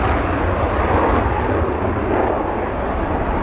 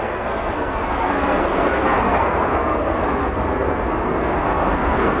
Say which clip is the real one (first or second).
first